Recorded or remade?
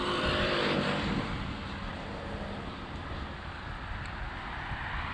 remade